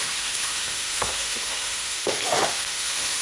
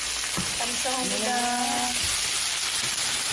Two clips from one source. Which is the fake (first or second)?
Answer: first